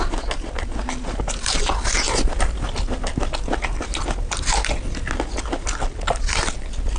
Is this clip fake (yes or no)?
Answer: no